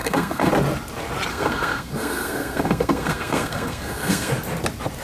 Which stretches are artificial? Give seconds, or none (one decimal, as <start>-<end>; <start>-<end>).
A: 0.0-0.5; 1.3-4.3